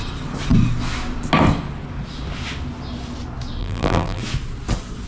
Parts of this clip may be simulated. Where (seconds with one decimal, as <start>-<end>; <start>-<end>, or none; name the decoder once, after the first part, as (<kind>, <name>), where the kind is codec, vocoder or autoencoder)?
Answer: 3.6-4.2 (vocoder, BigVGAN v2)